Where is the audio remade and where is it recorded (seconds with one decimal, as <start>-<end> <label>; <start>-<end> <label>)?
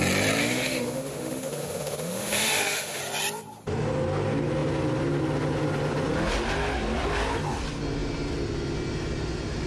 0.0-0.4 recorded; 0.4-3.0 remade; 3.0-9.7 recorded